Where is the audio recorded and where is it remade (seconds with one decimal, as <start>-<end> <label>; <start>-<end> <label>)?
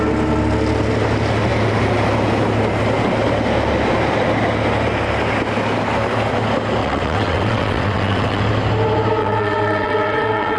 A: 0.0-6.8 recorded; 6.8-8.4 remade; 8.4-9.2 recorded; 9.2-10.6 remade